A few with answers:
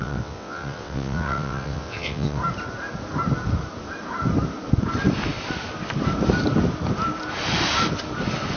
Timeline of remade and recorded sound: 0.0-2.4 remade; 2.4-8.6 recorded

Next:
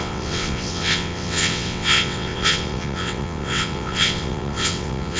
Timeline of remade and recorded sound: 0.0-5.2 remade

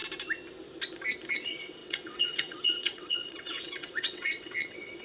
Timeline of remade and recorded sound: 0.0-1.3 recorded; 1.3-5.0 remade

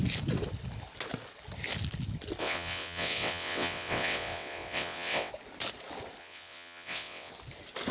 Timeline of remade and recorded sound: 0.0-2.4 recorded; 2.4-5.3 remade; 5.3-6.2 recorded; 6.2-7.3 remade; 7.3-7.9 recorded